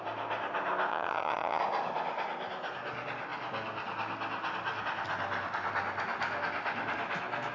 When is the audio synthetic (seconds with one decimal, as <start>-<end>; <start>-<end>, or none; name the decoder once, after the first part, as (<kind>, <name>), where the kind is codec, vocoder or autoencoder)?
0.9-1.6 (vocoder, HiFi-GAN)